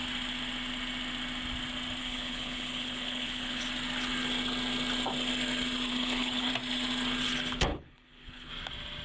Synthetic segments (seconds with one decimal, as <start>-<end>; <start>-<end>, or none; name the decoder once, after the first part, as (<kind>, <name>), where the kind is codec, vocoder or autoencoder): 2.0-3.6 (codec, HILCodec); 5.9-6.5; 7.7-8.5